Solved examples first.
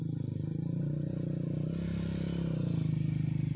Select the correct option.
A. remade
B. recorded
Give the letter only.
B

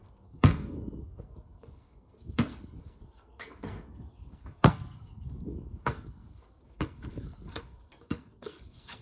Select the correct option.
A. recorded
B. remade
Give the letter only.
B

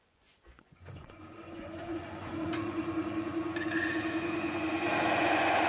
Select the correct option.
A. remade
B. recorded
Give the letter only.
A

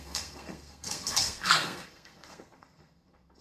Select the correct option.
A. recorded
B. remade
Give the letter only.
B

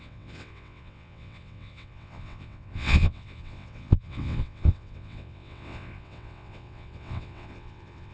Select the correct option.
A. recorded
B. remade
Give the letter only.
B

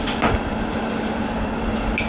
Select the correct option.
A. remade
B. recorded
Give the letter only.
B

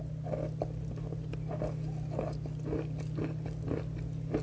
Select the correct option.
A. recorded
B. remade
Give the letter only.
A